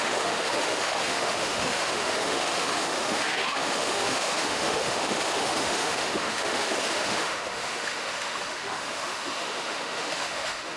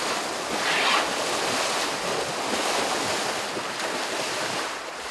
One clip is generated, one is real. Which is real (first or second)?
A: second